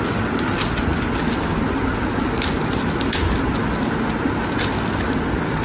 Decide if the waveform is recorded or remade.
recorded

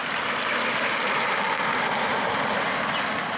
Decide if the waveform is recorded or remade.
recorded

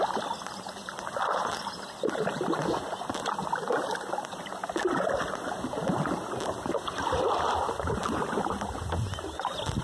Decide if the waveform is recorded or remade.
recorded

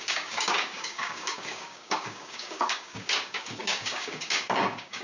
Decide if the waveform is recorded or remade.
remade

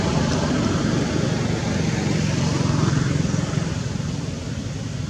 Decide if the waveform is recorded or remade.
recorded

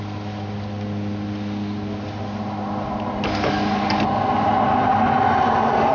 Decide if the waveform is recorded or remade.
recorded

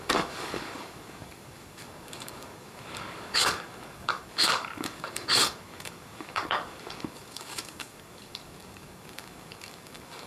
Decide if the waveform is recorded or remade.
remade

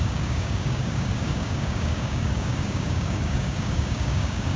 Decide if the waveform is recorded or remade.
remade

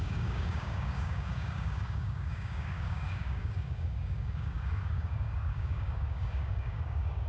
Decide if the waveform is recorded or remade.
remade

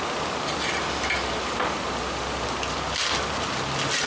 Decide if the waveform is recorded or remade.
recorded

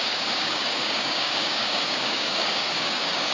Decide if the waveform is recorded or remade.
remade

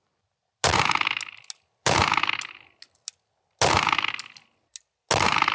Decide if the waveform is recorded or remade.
recorded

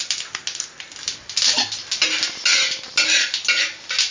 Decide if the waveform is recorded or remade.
recorded